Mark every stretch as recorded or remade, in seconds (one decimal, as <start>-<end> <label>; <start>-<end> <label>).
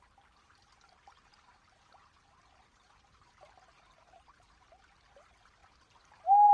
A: 0.0-6.5 remade